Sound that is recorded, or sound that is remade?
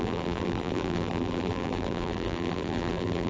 remade